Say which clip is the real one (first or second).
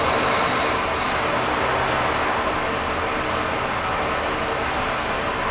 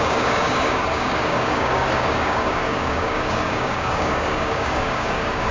first